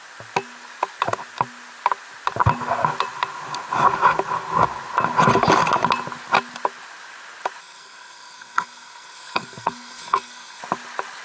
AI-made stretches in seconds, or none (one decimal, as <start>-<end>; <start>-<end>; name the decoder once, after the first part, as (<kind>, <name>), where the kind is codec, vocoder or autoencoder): 7.6-10.6 (codec, SNAC)